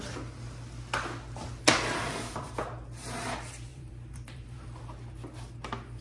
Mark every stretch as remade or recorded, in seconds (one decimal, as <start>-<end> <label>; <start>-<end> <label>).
0.0-2.0 recorded; 2.0-2.5 remade; 2.5-3.7 recorded; 3.7-4.8 remade; 4.8-6.0 recorded

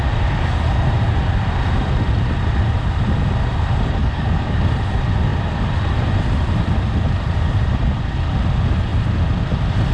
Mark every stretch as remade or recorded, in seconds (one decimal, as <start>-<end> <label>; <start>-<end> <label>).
0.0-4.0 recorded; 4.0-4.6 remade; 4.6-9.9 recorded

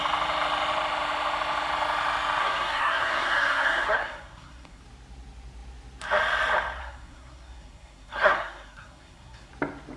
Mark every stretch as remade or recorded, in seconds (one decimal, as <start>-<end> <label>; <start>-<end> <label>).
0.0-2.4 recorded; 2.4-4.8 remade; 4.8-6.8 recorded; 6.8-9.5 remade; 9.5-10.0 recorded

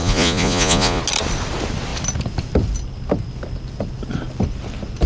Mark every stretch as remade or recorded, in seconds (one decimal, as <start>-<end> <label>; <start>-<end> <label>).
0.0-1.0 remade; 1.0-5.1 recorded